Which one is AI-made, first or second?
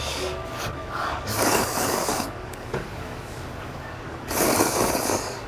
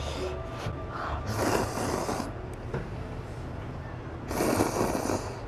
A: first